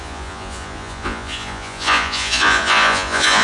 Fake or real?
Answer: fake